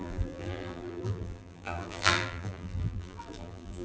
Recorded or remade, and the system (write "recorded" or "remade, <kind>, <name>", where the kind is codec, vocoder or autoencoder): remade, vocoder, BigVGAN v2